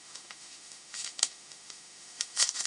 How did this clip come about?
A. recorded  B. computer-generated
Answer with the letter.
B